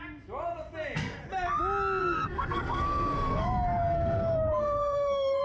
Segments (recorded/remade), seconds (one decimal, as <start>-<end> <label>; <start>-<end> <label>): 0.0-2.0 recorded; 2.0-5.4 remade